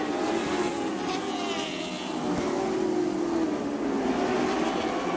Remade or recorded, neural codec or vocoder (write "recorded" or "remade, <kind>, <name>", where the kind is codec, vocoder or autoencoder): recorded